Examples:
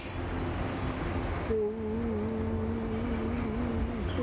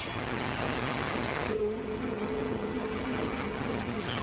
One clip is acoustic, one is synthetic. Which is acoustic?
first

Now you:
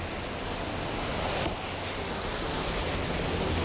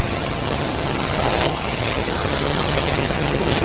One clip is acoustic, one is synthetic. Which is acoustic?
first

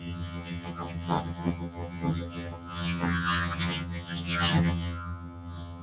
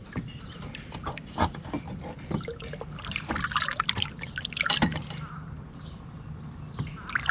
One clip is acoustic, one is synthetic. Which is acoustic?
second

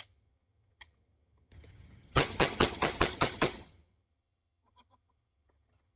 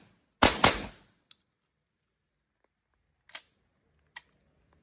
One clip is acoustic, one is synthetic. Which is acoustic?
second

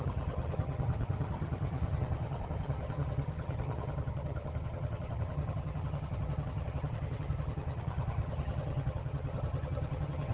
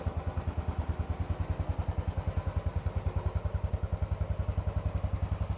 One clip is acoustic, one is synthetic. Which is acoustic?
second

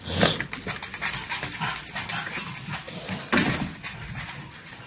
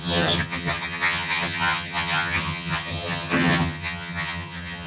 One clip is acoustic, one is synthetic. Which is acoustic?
first